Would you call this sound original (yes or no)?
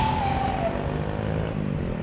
yes